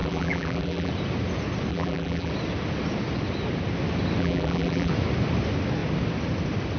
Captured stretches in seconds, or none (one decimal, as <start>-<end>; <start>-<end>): 0.9-1.7; 2.3-4.2; 4.9-6.8